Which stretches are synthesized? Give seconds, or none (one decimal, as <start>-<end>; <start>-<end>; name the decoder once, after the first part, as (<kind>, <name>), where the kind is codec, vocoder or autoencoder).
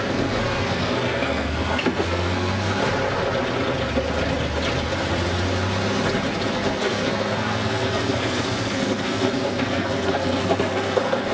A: 0.0-2.8 (codec, SNAC); 6.5-11.3